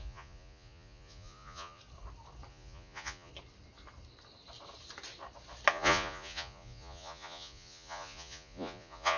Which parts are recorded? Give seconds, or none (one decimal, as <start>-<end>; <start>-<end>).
1.8-2.5; 3.3-5.7